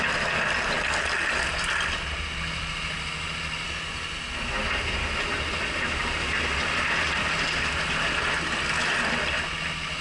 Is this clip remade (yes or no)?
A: no